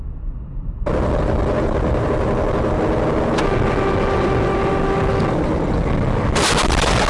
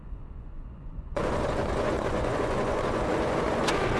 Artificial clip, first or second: second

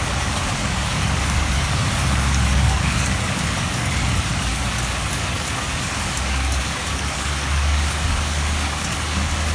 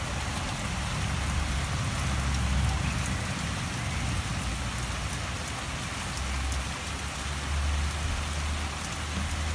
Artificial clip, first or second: first